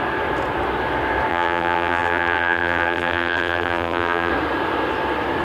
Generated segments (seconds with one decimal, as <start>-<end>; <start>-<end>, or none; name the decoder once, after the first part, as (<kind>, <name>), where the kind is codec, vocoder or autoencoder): 1.3-4.3 (vocoder, BigVGAN v2)